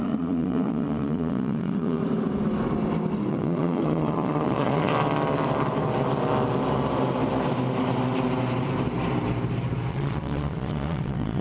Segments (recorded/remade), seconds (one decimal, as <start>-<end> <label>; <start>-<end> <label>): 0.0-2.0 remade; 2.0-3.3 recorded; 3.3-4.9 remade; 4.9-9.9 recorded; 9.9-11.4 remade